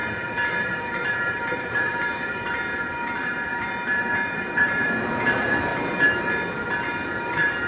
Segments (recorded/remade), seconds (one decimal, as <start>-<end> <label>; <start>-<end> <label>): 0.0-0.6 recorded; 0.6-5.7 remade; 5.7-7.2 recorded; 7.2-7.7 remade

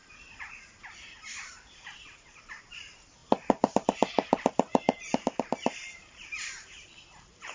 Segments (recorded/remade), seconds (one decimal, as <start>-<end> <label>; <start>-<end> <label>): 0.0-3.2 remade; 3.2-4.3 recorded; 4.3-7.5 remade

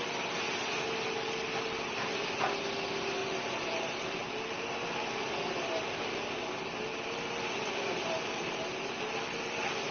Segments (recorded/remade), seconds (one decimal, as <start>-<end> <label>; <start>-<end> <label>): 0.0-9.9 recorded